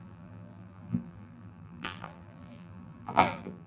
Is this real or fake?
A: fake